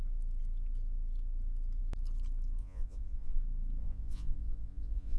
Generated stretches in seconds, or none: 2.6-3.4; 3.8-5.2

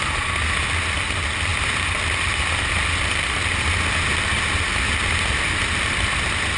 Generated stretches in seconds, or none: none

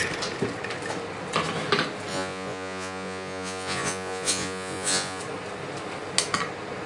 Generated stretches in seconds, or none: 2.1-5.2

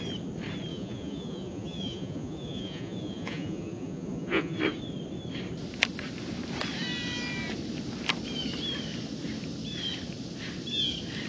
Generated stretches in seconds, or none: 0.7-4.6